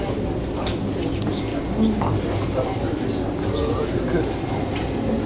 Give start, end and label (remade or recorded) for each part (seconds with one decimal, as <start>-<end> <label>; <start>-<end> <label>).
0.0-5.3 recorded